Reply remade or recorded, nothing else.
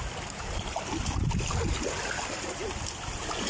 remade